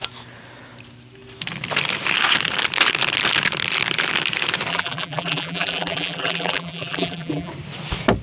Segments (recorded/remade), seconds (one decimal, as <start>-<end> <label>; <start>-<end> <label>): 0.0-4.7 recorded; 4.7-7.5 remade; 7.5-8.2 recorded